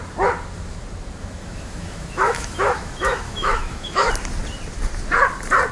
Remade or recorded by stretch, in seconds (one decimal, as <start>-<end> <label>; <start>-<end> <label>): 0.0-1.2 recorded; 1.2-4.1 remade; 4.1-5.7 recorded